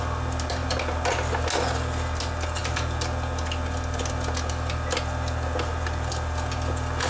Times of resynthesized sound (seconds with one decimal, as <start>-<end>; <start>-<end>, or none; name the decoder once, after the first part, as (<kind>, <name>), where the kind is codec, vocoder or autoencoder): none